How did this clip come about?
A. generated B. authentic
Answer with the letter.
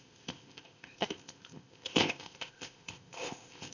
A